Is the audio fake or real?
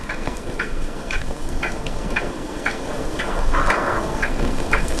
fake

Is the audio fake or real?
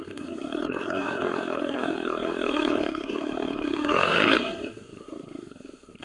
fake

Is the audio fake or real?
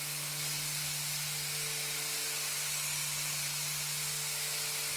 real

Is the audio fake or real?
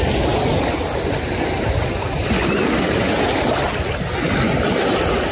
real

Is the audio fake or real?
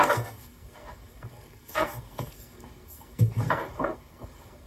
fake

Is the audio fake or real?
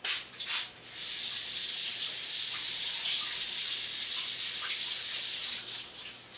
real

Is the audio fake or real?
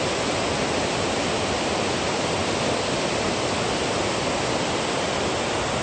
real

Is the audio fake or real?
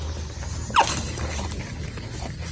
real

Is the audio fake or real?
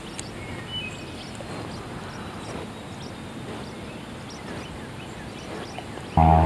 real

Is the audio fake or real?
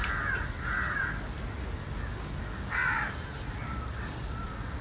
real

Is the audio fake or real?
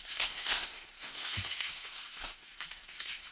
fake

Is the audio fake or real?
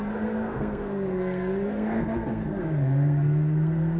fake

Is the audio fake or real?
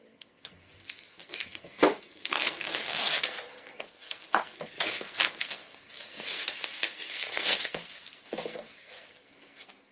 fake